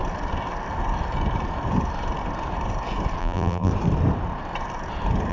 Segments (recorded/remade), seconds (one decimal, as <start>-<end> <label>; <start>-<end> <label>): 0.0-3.2 recorded; 3.2-3.7 remade; 3.7-5.3 recorded